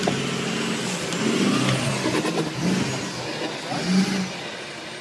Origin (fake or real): real